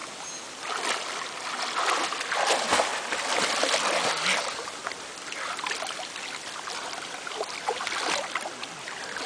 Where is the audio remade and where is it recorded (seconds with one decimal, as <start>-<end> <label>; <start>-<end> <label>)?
0.0-9.3 recorded